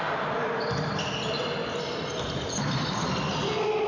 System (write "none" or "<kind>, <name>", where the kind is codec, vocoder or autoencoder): none